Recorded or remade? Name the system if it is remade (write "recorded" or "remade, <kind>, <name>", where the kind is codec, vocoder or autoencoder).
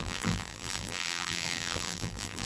remade, vocoder, BigVGAN v2